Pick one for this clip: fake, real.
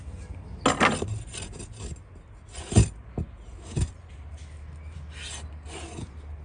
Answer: real